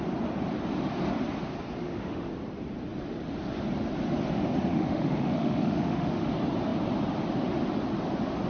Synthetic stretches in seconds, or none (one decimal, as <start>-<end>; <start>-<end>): 1.8-2.3; 4.7-6.3